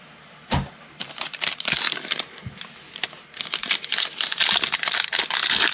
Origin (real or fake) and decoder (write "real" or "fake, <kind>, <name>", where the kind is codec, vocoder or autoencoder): real